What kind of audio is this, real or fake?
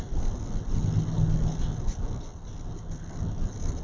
real